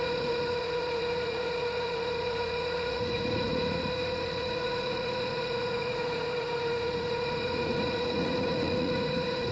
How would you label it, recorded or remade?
remade